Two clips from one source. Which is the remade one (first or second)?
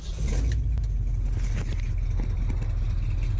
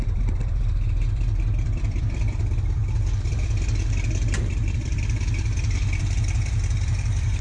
second